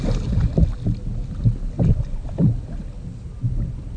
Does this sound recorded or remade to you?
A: recorded